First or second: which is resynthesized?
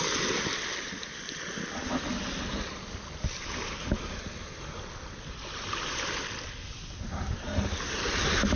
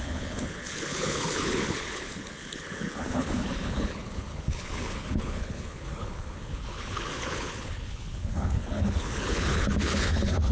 second